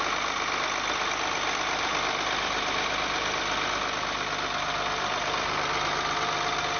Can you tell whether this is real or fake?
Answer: real